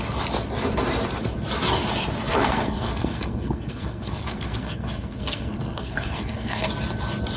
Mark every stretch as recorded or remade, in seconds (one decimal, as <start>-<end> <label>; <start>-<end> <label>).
0.0-2.3 recorded; 2.3-6.7 remade; 6.7-7.4 recorded